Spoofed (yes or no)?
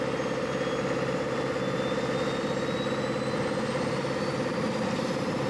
no